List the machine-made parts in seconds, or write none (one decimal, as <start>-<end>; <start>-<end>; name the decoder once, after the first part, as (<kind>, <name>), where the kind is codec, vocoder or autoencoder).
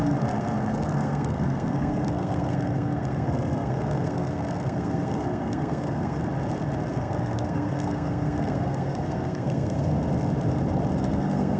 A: 0.0-6.2 (codec, SNAC); 6.9-9.9; 11.0-11.6